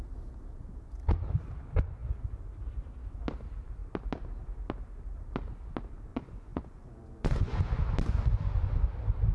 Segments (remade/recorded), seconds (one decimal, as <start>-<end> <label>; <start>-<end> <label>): 0.0-6.1 recorded; 6.1-7.7 remade; 7.7-9.3 recorded